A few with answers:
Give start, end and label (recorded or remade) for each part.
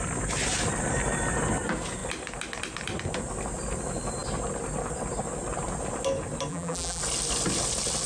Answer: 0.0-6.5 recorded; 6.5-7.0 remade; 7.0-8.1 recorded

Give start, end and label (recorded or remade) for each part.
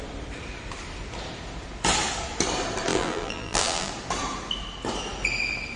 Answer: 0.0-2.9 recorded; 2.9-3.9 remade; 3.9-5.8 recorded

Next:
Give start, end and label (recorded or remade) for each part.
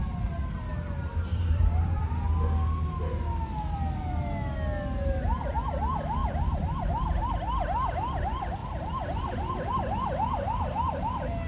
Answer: 0.0-1.3 recorded; 1.3-2.1 remade; 2.1-6.2 recorded; 6.2-7.3 remade; 7.3-11.5 recorded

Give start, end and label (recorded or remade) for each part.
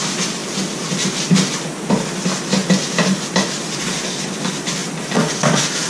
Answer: 0.0-5.9 recorded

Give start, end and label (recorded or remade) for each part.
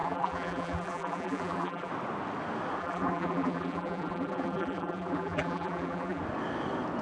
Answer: 0.0-1.9 remade; 1.9-2.8 recorded; 2.8-6.2 remade; 6.2-7.0 recorded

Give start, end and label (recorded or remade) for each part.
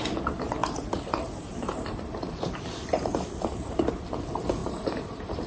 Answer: 0.0-0.6 recorded; 0.6-3.9 remade; 3.9-4.6 recorded; 4.6-5.5 remade